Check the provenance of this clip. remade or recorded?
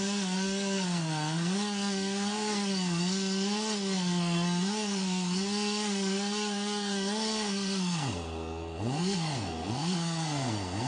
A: remade